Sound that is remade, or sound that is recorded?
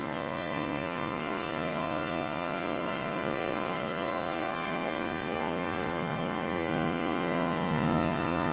remade